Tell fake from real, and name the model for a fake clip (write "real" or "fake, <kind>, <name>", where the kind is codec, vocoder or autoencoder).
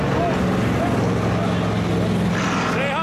real